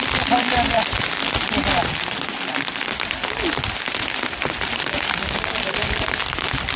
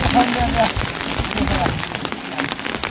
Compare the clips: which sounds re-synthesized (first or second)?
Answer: first